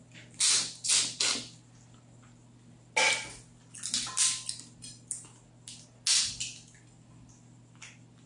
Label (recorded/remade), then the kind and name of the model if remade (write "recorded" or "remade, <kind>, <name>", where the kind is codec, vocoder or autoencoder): recorded